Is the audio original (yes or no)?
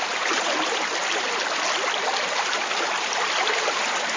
yes